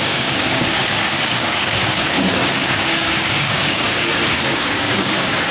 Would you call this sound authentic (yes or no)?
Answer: no